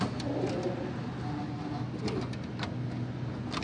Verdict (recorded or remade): recorded